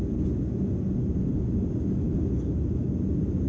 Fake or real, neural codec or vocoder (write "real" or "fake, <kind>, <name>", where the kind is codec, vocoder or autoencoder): real